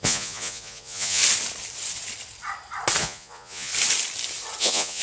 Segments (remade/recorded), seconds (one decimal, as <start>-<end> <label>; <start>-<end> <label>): 0.0-1.2 remade; 1.2-3.0 recorded; 3.0-3.7 remade; 3.7-4.6 recorded; 4.6-5.0 remade